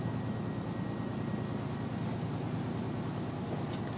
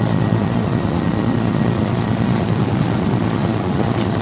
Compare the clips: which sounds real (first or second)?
first